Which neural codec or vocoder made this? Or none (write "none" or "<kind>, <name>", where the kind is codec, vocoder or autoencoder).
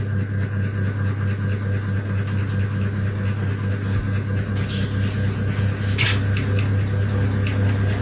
none